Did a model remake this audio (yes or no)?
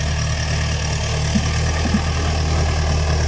no